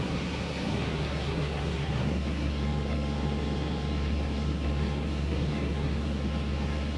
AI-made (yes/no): yes